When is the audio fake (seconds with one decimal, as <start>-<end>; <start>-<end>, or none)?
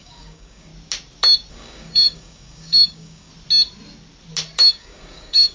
0.0-0.7; 1.5-3.3; 4.6-5.5